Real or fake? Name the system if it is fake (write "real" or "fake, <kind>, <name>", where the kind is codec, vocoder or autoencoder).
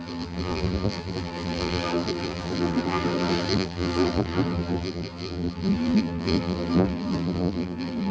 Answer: fake, vocoder, BigVGAN v2